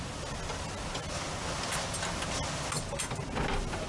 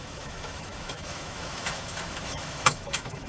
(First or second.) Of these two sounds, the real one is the first